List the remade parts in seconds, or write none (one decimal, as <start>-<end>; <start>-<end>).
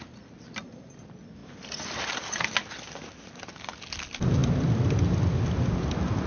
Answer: none